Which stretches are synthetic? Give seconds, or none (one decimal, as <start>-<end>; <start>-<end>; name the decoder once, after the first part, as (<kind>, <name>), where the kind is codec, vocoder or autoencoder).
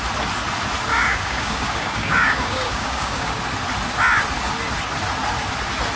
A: 0.9-3.4 (codec, DAC)